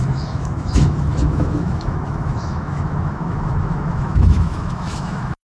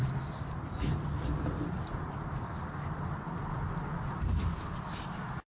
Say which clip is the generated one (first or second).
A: first